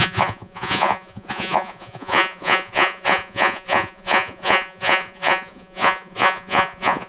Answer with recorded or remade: remade